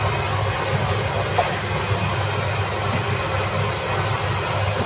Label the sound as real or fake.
real